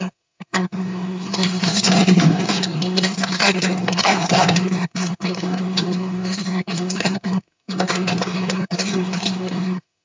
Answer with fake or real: fake